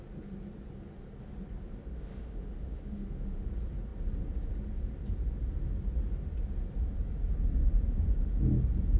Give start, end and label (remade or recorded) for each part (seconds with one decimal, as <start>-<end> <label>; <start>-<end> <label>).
0.0-1.9 recorded; 1.9-3.5 remade; 3.5-9.0 recorded